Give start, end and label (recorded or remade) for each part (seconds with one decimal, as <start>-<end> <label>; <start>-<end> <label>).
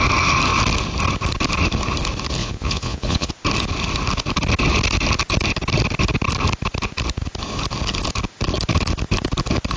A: 0.0-2.4 recorded; 2.4-3.3 remade; 3.3-9.8 recorded